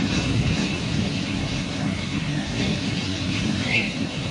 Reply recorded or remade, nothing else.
remade